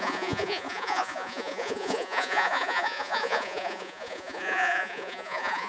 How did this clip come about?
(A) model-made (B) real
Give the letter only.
A